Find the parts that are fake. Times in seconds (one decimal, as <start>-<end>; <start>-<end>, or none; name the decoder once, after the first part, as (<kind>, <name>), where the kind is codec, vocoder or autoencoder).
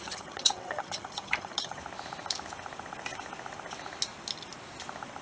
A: 0.0-1.8 (vocoder, HiFi-GAN)